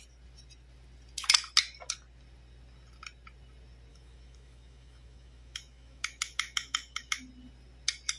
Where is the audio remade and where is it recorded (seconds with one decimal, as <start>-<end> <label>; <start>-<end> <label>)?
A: 0.0-3.9 recorded; 3.9-7.2 remade; 7.2-8.2 recorded